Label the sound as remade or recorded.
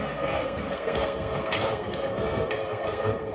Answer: remade